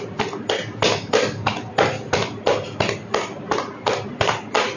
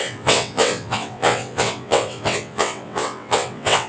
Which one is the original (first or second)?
first